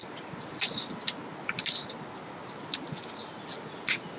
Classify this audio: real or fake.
real